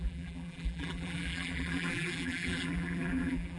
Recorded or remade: remade